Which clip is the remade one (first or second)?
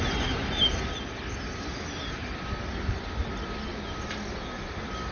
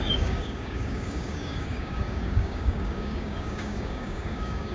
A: second